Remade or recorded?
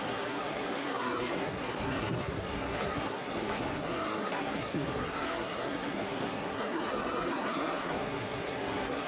remade